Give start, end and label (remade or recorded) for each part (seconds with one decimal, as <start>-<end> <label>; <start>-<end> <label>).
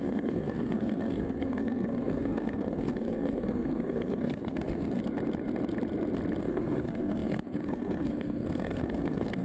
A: 0.0-5.0 remade; 5.0-6.4 recorded; 6.4-9.4 remade